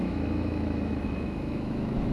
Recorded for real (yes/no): no